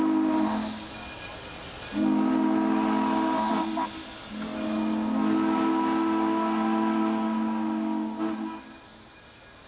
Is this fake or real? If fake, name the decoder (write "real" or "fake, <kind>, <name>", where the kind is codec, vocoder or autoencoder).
real